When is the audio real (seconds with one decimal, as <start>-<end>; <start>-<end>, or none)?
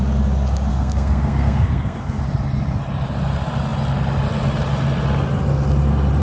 0.0-0.7; 2.2-6.2